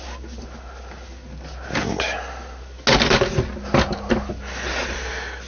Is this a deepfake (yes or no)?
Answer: no